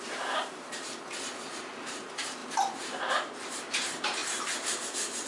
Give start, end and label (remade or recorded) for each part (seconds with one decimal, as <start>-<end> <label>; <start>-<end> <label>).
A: 0.0-0.7 remade; 0.7-1.7 recorded; 1.7-5.3 remade